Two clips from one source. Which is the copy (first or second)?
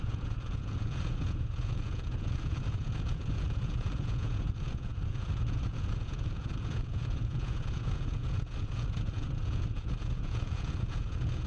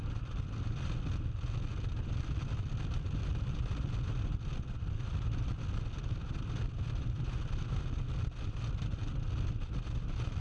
first